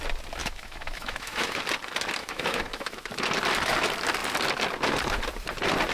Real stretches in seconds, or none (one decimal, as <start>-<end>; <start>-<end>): 0.0-0.4; 1.6-2.2; 3.1-5.9